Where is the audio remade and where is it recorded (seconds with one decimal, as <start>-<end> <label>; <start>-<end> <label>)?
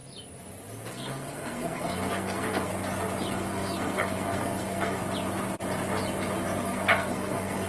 0.0-0.9 recorded; 0.9-2.7 remade; 2.7-3.3 recorded; 3.3-5.0 remade; 5.0-6.6 recorded; 6.6-7.7 remade